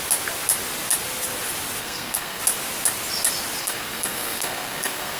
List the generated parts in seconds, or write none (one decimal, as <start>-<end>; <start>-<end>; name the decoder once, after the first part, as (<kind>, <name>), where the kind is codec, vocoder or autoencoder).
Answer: 1.8-2.4 (codec, SNAC); 3.6-5.2